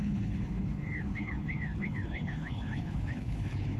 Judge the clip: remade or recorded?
remade